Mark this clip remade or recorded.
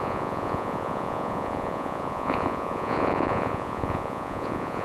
remade